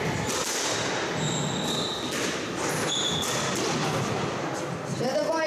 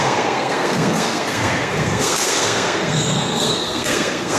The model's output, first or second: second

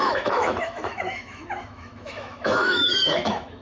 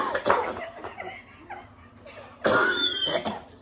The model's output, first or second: first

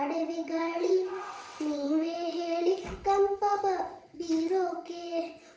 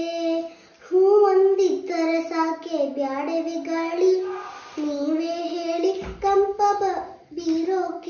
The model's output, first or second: first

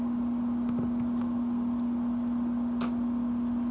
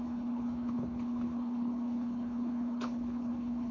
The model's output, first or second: second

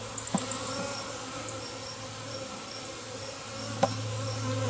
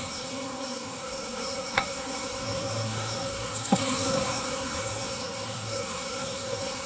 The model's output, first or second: second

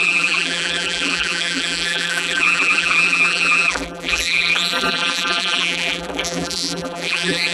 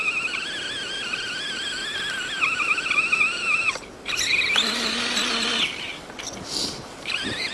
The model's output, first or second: first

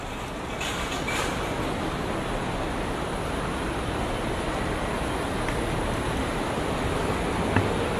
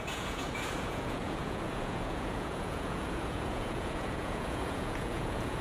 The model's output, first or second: second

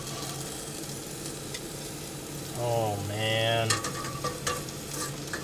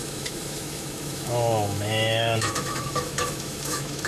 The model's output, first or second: second